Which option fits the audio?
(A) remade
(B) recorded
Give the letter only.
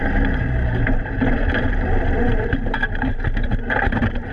A